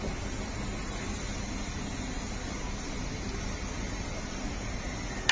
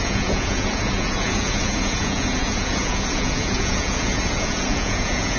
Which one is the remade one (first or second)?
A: second